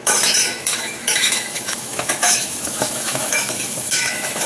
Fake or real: fake